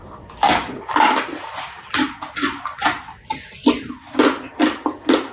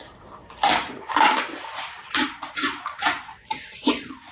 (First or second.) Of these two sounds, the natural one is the first